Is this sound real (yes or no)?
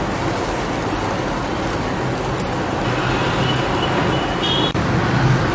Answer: yes